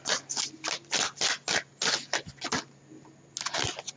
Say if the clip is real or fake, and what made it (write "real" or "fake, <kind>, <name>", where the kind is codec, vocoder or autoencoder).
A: real